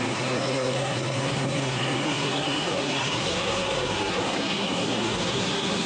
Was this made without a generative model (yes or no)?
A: no